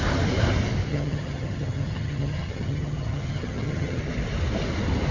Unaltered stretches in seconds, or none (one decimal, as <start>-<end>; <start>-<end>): 0.0-0.9; 4.0-5.1